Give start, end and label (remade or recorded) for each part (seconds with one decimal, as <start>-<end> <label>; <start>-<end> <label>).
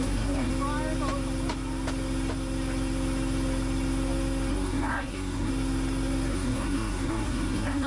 0.0-0.5 remade; 0.5-4.5 recorded; 4.5-5.5 remade; 5.5-6.3 recorded; 6.3-7.9 remade